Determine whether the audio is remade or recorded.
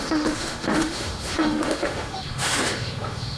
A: remade